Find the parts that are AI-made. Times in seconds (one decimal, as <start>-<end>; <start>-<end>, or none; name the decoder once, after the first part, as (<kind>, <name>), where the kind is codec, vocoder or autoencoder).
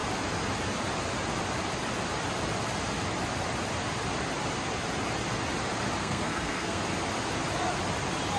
6.0-6.8 (codec, SNAC)